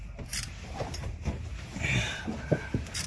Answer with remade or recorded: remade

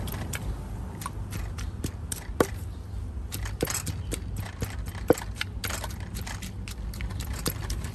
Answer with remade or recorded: recorded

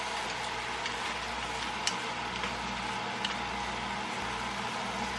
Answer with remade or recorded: recorded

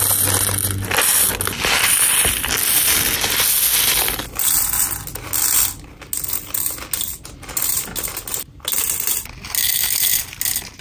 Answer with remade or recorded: recorded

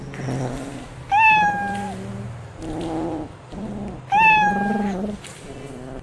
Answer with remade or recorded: recorded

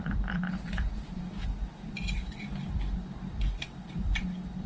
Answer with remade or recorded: remade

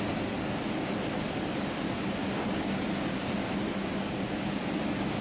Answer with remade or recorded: recorded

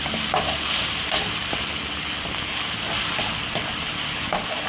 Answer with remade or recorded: remade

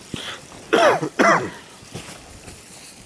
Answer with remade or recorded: remade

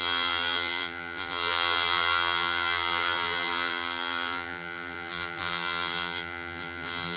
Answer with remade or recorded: remade